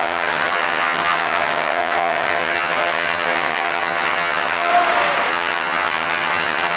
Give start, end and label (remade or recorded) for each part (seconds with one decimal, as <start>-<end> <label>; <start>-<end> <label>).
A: 0.0-4.7 remade; 4.7-5.3 recorded; 5.3-6.8 remade